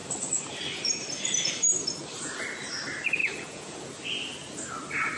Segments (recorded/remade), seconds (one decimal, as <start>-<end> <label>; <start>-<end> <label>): 0.0-3.2 recorded; 3.2-3.9 remade; 3.9-5.2 recorded